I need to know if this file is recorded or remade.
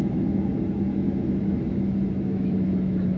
remade